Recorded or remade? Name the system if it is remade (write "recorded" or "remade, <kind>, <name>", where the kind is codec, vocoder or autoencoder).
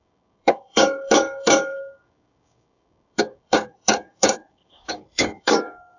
remade, codec, DAC